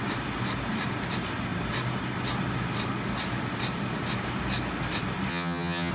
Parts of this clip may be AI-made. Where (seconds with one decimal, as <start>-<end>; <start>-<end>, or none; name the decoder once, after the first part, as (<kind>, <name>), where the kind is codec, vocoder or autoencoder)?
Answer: 5.3-5.9 (vocoder, HiFi-GAN)